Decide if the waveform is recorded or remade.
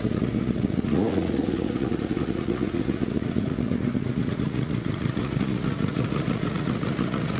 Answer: remade